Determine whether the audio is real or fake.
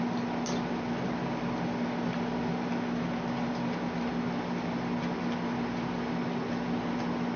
real